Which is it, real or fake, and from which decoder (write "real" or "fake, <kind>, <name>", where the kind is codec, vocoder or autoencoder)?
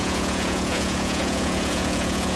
fake, vocoder, Vocos